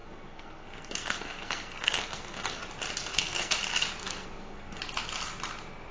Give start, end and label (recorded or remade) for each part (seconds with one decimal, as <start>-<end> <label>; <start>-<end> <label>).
0.0-2.6 remade; 2.6-3.1 recorded; 3.1-3.6 remade; 3.6-4.0 recorded; 4.0-4.8 remade; 4.8-5.9 recorded